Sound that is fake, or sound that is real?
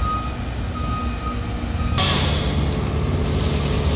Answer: real